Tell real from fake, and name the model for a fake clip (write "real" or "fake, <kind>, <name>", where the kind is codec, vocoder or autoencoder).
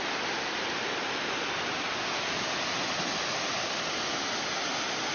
real